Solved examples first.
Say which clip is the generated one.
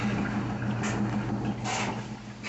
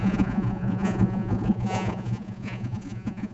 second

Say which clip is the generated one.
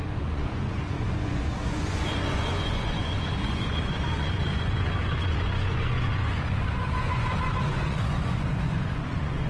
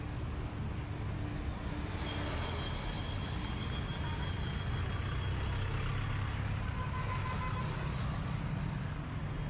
first